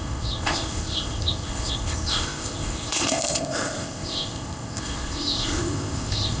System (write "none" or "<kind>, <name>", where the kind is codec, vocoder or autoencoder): codec, ZipCodec